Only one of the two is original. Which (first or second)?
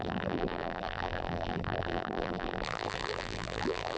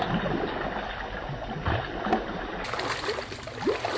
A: second